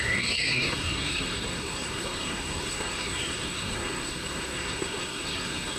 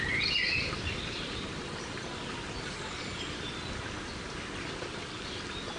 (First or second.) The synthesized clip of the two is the first